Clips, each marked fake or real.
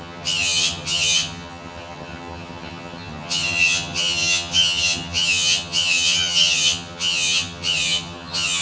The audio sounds fake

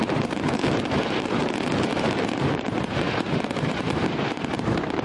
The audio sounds fake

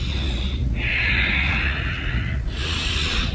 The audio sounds fake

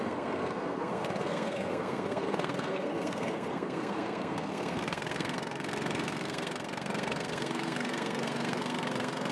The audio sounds fake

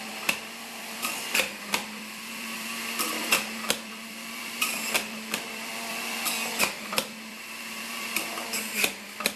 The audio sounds fake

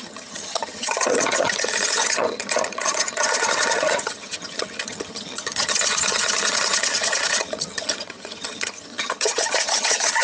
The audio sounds fake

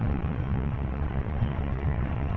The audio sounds fake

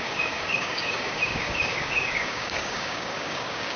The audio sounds fake